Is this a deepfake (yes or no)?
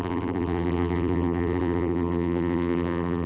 yes